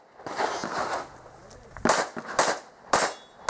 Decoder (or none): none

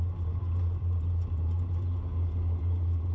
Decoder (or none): none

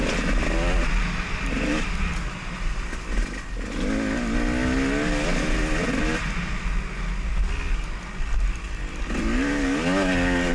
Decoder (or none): none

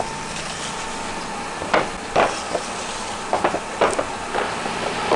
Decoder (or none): none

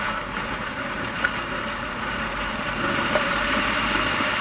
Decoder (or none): vocoder, BigVGAN v2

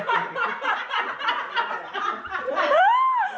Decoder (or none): none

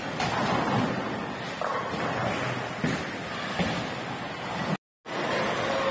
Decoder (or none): none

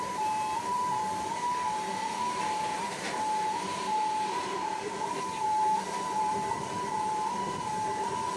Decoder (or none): vocoder, BigVGAN v2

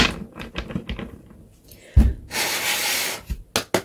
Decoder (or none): none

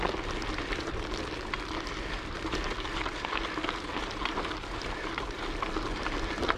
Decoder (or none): none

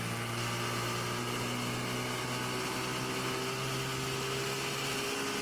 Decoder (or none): none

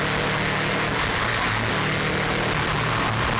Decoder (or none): none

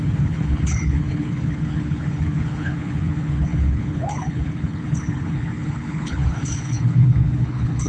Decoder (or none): codec, HILCodec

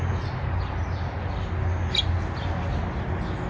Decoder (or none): none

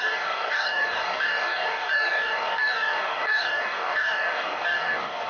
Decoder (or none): codec, DAC